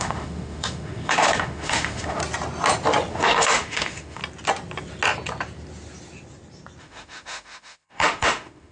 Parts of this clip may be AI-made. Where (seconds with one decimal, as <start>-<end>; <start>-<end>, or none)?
0.0-2.2; 3.1-4.2; 6.8-8.7